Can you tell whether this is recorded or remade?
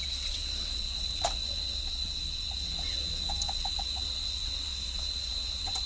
remade